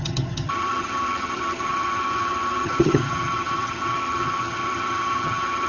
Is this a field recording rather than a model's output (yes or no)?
no